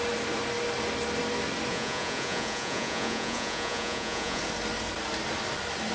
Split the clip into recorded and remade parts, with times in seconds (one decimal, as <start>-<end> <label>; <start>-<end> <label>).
0.0-1.7 recorded; 1.7-4.4 remade; 4.4-5.9 recorded